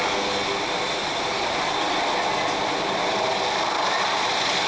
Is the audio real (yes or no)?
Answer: yes